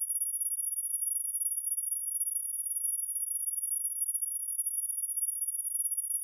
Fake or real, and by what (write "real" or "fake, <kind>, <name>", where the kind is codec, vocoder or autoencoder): fake, vocoder, BigVGAN v2